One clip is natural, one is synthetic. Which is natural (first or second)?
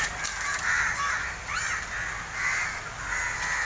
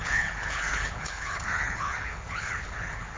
first